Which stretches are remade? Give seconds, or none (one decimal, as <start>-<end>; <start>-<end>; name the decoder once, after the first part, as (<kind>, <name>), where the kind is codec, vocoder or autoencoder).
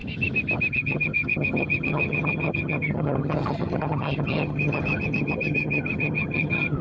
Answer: 0.7-6.8 (vocoder, HiFi-GAN)